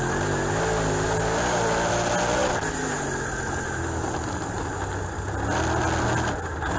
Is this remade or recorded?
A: recorded